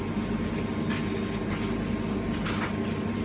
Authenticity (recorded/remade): recorded